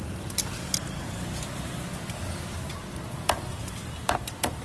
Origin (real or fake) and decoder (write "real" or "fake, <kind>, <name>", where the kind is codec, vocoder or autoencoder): real